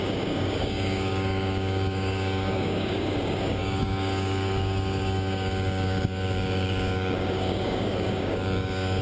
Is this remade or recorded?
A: remade